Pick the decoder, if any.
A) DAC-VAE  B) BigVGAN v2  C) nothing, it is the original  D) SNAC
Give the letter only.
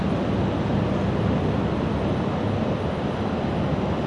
C